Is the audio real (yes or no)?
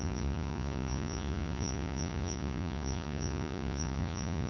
no